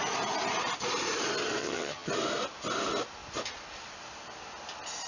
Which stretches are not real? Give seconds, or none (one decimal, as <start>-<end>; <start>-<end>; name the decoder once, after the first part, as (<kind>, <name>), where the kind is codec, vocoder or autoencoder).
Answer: 1.6-2.1 (vocoder, HiFi-GAN)